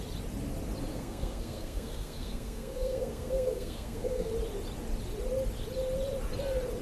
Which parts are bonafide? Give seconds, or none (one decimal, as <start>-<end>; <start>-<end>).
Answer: 0.0-0.9; 4.3-6.8